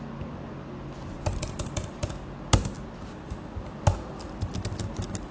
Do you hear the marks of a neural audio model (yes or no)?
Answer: no